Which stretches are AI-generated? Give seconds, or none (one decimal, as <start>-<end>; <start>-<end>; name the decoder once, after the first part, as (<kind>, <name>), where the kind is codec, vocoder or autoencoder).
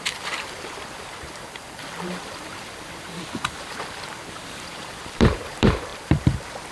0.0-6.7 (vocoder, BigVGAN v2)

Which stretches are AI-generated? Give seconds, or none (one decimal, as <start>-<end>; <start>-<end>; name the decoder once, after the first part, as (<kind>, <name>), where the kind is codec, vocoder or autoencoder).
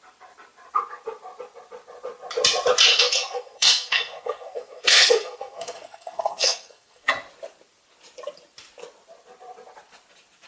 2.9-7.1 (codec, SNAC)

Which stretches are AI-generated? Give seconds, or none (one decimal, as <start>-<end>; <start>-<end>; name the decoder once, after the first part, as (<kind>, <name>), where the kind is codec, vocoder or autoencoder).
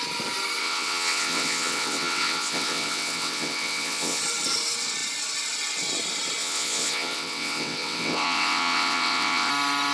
0.6-4.2 (vocoder, WaveNeXt); 6.4-9.5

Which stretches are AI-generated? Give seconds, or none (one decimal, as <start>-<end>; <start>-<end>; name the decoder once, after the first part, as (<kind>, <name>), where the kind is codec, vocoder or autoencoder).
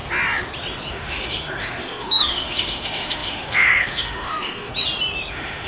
0.9-4.7 (autoencoder, DAC-VAE); 5.3-5.7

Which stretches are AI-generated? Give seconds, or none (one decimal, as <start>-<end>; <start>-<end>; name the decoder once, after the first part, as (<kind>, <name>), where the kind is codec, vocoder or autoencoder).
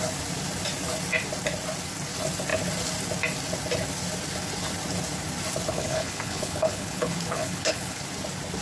5.7-8.0 (codec, HILCodec)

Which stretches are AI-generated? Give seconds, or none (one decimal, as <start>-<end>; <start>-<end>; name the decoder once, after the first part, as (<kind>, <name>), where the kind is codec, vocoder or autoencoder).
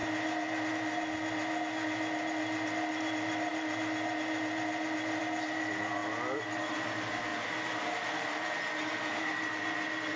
7.3-8.5 (vocoder, BigVGAN v2)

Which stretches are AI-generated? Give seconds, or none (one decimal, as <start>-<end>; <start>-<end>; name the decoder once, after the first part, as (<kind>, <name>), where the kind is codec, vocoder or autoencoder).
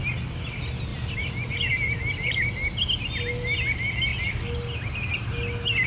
none